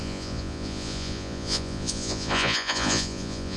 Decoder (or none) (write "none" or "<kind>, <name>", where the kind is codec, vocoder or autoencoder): vocoder, Vocos